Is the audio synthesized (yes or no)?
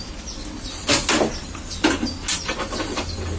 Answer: no